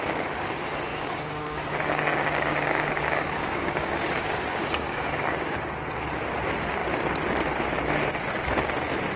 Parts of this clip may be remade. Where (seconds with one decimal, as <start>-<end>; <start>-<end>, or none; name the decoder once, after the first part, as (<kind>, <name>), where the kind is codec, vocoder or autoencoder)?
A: 0.9-5.6 (codec, DAC)